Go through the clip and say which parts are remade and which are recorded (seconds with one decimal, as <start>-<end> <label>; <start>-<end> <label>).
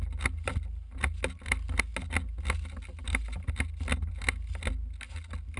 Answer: 0.0-5.6 recorded